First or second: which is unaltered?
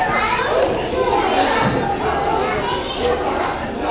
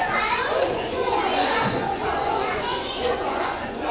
first